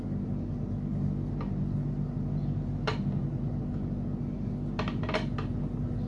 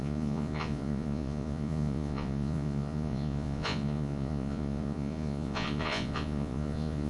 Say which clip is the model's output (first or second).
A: second